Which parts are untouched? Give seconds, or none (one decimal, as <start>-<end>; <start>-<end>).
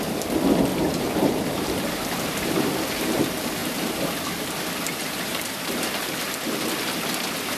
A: 0.0-0.7; 3.2-3.6; 4.1-5.3; 6.2-7.6